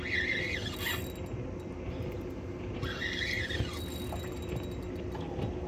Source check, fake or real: real